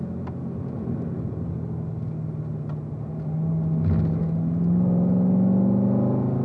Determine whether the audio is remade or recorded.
recorded